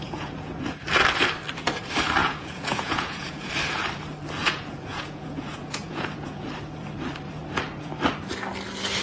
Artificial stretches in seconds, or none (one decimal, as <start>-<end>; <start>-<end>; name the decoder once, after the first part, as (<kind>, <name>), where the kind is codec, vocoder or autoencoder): 0.0-0.8 (vocoder, Vocos); 2.2-3.5; 4.4-6.5